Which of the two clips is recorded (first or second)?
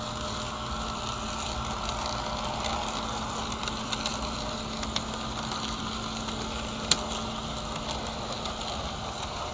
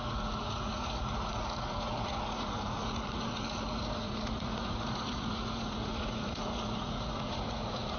first